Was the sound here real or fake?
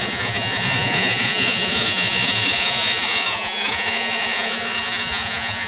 fake